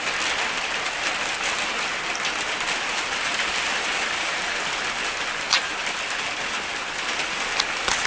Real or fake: real